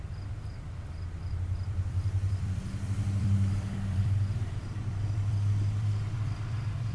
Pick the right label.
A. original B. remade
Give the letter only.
B